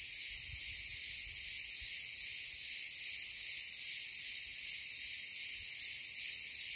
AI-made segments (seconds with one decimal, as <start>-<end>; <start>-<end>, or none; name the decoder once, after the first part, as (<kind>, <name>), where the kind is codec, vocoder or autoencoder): none